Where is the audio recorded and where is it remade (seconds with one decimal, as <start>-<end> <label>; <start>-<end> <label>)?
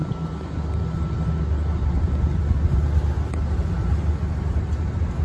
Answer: 0.0-1.4 remade; 1.4-5.2 recorded